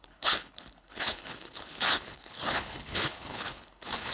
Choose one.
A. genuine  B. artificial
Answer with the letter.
B